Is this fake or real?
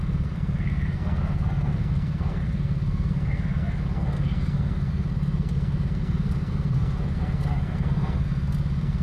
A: fake